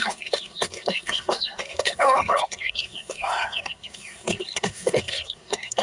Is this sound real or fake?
fake